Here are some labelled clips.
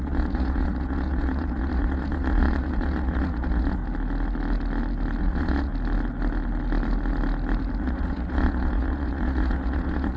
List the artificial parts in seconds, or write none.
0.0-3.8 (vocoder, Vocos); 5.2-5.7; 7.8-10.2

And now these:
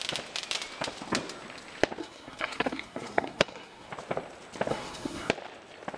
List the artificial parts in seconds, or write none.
2.0-3.9 (codec, SNAC); 4.7-5.3

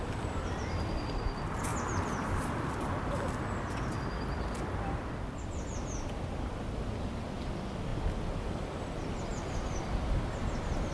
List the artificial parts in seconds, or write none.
1.7-2.9 (vocoder, BigVGAN v2); 9.3-9.8

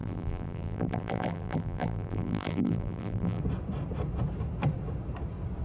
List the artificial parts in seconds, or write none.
0.0-3.4 (vocoder, BigVGAN v2)

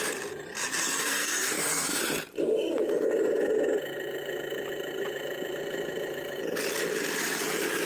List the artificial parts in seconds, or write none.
0.8-2.0 (codec, SNAC)

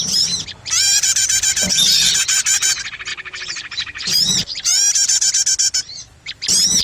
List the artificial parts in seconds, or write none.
3.1-4.8 (vocoder, BigVGAN v2)